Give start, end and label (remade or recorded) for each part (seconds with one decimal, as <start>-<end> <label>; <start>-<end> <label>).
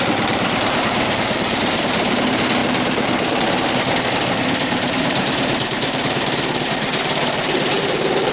0.0-8.3 remade